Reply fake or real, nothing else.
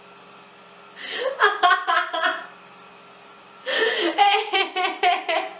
real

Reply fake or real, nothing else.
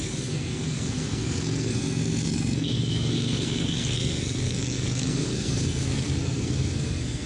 fake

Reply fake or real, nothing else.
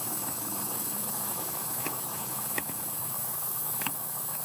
fake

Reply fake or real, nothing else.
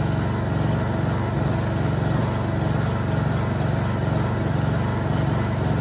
real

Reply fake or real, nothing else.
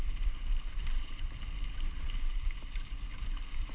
real